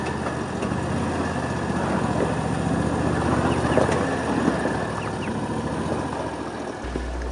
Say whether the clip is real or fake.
real